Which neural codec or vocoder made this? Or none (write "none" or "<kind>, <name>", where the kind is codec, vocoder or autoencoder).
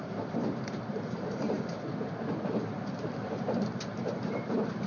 vocoder, BigVGAN v2